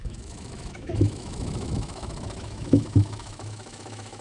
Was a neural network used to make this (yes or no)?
yes